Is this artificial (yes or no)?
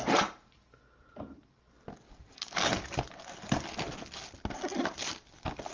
no